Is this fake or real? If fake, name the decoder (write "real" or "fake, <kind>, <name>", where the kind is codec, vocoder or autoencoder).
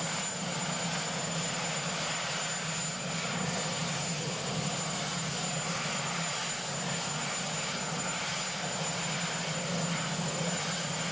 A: real